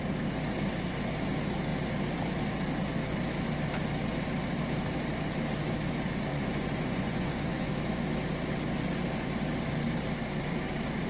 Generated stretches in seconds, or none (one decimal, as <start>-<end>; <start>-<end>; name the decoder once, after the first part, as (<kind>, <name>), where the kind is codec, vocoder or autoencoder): 6.3-7.7 (vocoder, Vocos)